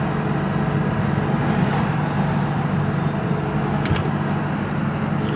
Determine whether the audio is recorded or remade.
recorded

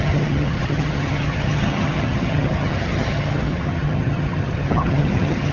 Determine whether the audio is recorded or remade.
remade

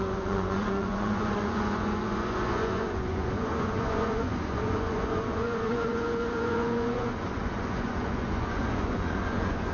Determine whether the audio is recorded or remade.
remade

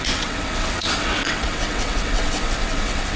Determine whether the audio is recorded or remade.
remade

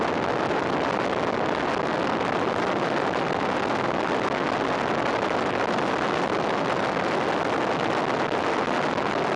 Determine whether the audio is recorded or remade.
recorded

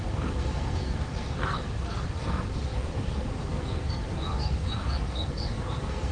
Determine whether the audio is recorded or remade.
remade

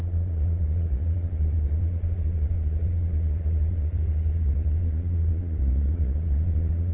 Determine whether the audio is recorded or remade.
remade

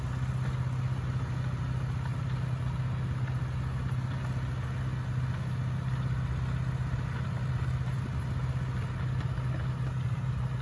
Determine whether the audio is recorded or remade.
recorded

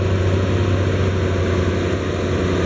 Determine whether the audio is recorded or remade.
recorded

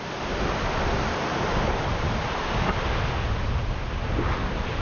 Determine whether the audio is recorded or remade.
recorded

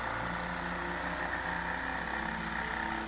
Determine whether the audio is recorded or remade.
recorded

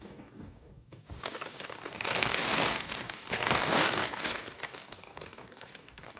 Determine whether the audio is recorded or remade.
remade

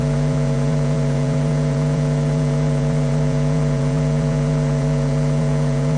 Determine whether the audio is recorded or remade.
remade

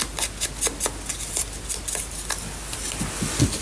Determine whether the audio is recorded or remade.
recorded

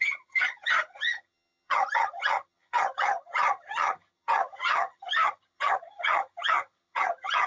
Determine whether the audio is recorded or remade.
remade